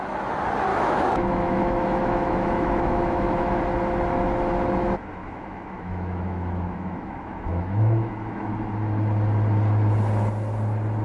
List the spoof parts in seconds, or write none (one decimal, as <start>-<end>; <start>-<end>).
0.7-3.6; 5.2-8.5